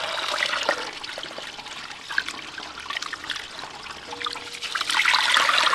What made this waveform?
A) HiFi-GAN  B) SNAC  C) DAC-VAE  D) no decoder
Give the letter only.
D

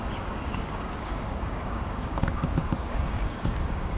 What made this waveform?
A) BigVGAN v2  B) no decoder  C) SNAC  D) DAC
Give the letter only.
D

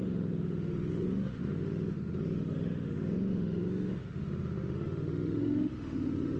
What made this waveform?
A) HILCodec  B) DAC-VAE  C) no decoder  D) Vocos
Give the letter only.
B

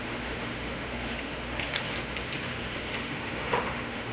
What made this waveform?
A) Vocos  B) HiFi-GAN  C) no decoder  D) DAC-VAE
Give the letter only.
D